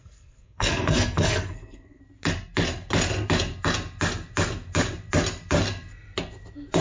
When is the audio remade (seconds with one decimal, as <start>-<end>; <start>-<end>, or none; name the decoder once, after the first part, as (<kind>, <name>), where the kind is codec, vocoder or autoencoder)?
0.0-2.0 (codec, SNAC)